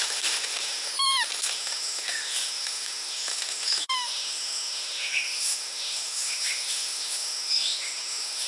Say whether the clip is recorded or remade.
remade